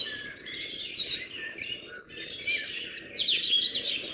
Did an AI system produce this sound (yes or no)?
yes